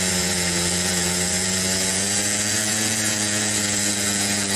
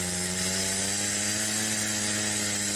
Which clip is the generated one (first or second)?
first